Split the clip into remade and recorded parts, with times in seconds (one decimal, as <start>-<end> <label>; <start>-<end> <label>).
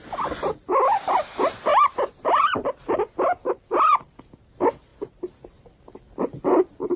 0.0-1.7 recorded; 1.7-2.6 remade; 2.6-3.7 recorded; 3.7-4.2 remade; 4.2-7.0 recorded